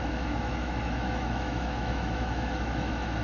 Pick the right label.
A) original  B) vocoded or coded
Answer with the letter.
B